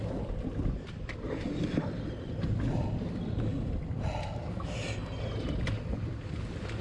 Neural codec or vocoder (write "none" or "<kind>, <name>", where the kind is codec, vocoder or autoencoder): none